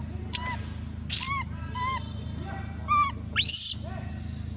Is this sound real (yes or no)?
yes